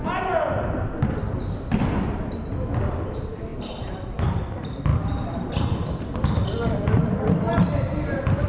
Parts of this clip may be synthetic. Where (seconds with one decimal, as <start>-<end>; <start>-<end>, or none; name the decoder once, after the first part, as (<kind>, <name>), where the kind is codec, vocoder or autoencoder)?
3.5-4.0 (vocoder, BigVGAN v2); 4.9-5.7